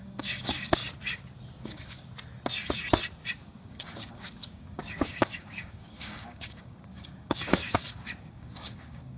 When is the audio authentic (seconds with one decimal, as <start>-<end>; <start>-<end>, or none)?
0.8-1.6; 2.1-3.3